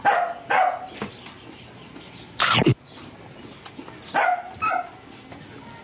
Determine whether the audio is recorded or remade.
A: recorded